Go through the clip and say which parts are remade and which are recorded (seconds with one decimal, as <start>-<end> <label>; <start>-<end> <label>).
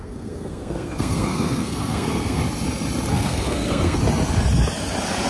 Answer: 0.0-2.4 remade; 2.4-3.1 recorded; 3.1-4.0 remade; 4.0-5.3 recorded